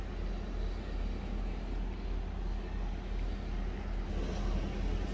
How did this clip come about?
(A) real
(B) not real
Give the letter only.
A